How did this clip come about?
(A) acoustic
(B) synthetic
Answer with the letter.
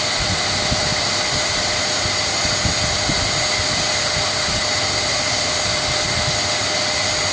A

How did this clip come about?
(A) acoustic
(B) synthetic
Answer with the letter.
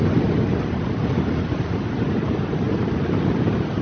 A